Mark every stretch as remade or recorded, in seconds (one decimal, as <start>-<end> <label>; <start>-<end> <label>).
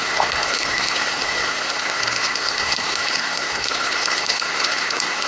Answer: 0.0-5.3 remade